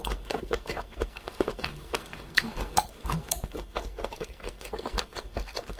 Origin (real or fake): fake